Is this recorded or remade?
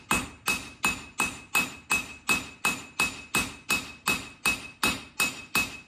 recorded